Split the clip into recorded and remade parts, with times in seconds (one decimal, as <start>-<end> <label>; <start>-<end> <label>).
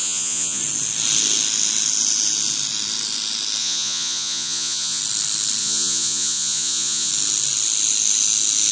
0.0-0.6 remade; 0.6-3.6 recorded; 3.6-5.0 remade; 5.0-5.6 recorded; 5.6-7.1 remade; 7.1-8.7 recorded